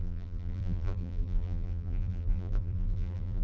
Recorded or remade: remade